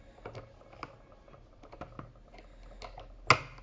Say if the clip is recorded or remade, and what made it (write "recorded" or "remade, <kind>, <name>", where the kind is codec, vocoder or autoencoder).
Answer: recorded